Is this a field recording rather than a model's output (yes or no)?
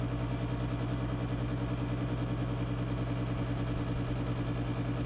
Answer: yes